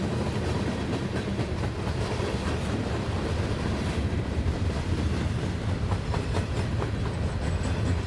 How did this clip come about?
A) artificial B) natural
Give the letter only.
A